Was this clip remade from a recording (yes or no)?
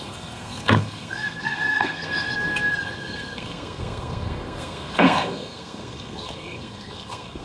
yes